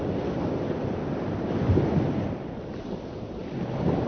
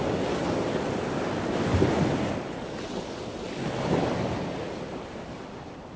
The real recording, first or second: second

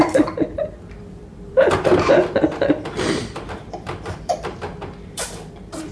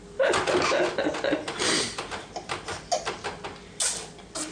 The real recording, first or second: second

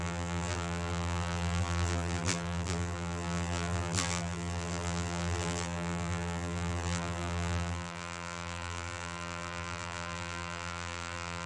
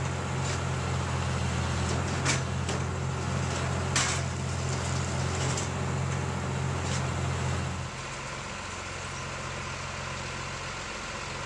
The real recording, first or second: second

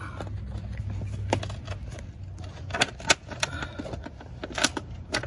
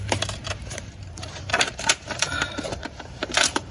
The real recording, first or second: first